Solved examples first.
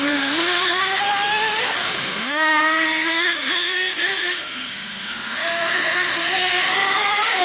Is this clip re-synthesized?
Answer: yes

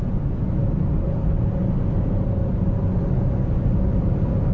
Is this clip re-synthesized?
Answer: no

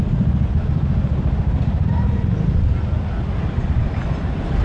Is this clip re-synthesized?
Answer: yes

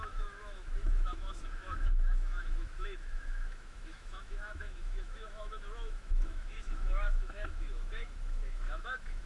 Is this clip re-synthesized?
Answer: yes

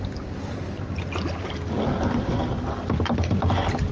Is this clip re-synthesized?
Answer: no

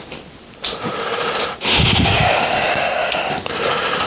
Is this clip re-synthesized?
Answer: no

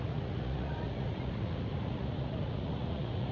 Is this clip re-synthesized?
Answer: yes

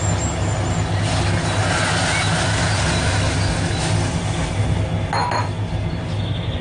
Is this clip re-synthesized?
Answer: no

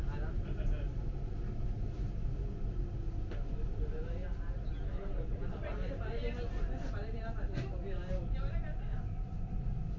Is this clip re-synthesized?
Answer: no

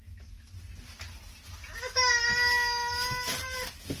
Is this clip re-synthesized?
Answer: no